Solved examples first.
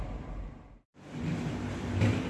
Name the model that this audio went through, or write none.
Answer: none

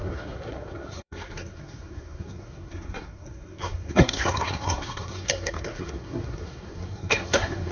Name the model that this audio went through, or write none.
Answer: codec, SNAC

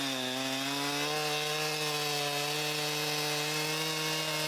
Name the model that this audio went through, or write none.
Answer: none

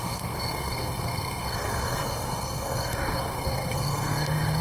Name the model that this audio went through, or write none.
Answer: codec, SNAC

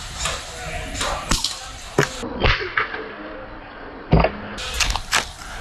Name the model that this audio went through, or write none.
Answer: none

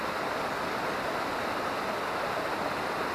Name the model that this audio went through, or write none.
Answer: none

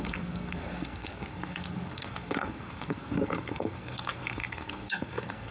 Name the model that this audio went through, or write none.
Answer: codec, SNAC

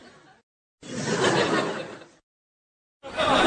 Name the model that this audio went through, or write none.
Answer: none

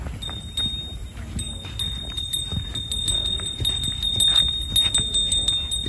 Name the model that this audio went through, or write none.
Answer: none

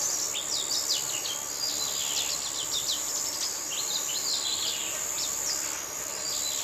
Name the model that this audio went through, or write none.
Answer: none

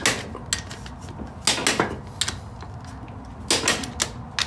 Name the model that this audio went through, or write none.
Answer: none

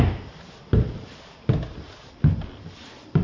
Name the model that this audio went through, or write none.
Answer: none